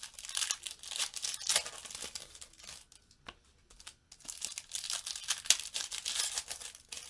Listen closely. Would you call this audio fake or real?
real